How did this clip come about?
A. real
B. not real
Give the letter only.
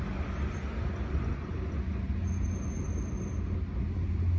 A